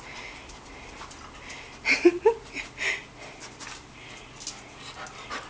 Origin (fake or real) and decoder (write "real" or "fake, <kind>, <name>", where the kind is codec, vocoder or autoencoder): real